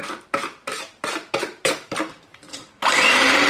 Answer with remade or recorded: remade